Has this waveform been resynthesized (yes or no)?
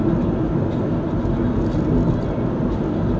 no